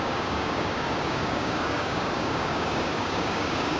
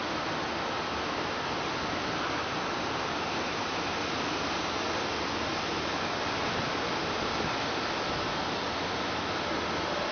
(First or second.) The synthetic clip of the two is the first